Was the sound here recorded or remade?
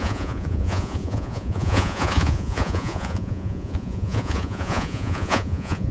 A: remade